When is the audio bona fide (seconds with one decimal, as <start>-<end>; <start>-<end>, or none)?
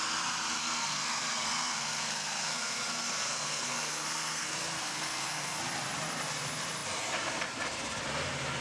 0.0-0.6; 5.6-8.6